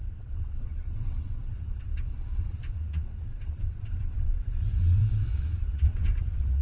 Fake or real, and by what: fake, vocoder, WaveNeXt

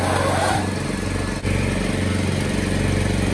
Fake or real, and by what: real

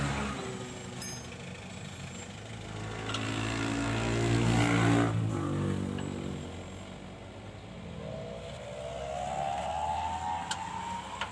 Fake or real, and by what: real